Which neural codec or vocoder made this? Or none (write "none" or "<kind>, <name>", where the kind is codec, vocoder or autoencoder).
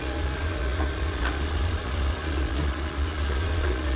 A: vocoder, Vocos